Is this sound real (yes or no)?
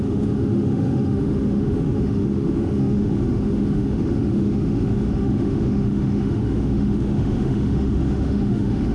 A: no